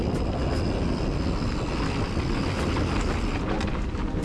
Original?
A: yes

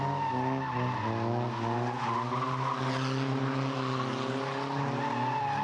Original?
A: yes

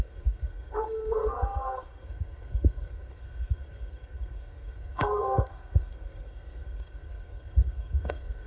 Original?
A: no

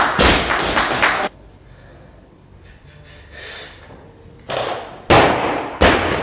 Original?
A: yes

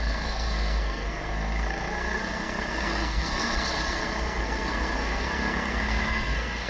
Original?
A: no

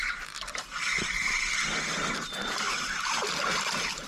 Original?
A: yes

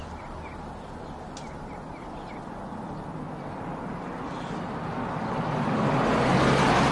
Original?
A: yes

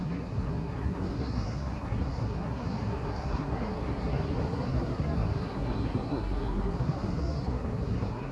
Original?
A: no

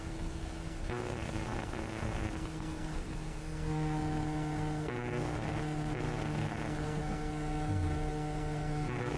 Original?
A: no